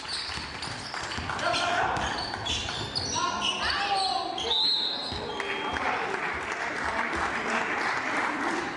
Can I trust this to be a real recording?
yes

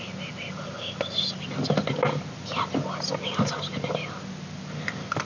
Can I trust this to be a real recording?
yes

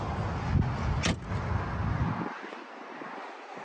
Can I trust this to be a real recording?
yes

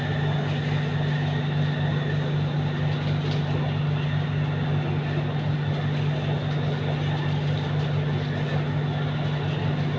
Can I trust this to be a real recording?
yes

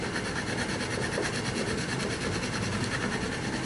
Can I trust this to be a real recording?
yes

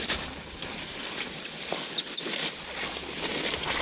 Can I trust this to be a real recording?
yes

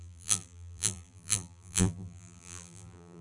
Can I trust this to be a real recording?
no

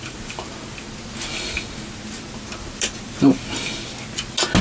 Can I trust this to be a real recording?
yes